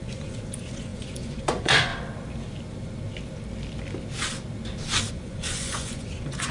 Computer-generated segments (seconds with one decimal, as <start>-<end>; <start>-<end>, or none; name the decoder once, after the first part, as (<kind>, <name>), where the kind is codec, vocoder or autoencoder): 0.0-1.9 (vocoder, Vocos); 5.1-6.5